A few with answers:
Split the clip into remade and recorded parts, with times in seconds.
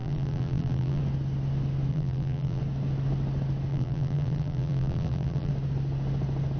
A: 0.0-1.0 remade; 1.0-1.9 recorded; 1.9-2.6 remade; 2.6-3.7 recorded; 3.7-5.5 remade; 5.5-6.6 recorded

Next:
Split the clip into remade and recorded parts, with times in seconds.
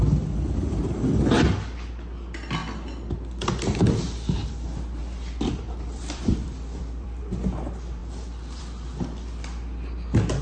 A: 0.0-5.0 recorded; 5.0-7.2 remade; 7.2-10.4 recorded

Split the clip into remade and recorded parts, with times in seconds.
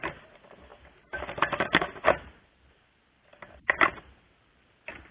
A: 0.0-0.7 recorded; 0.7-1.8 remade; 1.8-3.3 recorded; 3.3-4.0 remade; 4.0-5.1 recorded